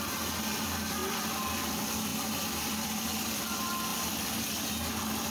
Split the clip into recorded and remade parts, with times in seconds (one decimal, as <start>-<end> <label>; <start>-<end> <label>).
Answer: 0.0-5.3 recorded